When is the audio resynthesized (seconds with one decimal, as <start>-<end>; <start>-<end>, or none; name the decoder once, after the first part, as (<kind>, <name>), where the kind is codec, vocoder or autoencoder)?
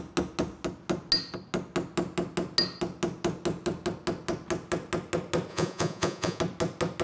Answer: 5.5-6.4 (vocoder, Vocos)